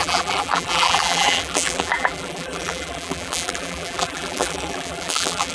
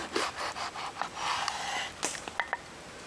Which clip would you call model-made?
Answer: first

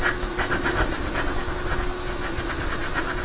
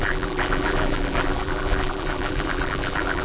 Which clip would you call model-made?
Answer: second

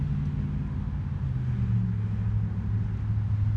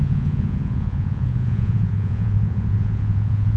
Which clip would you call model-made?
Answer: second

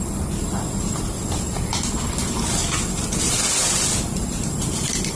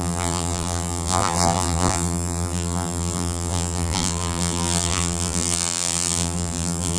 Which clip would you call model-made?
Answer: second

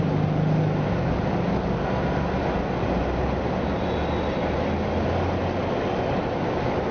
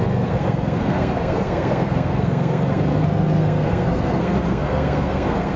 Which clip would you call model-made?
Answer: second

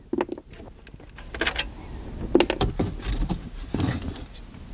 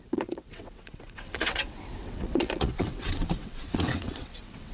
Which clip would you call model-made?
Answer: second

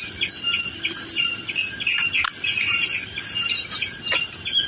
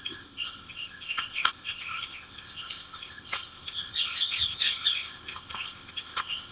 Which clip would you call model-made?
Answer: second